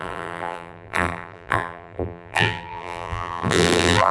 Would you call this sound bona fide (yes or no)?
no